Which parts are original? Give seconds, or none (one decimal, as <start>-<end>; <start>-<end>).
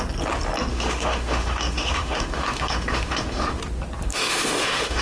0.0-0.7; 3.6-4.1